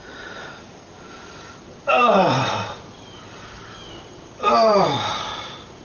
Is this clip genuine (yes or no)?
no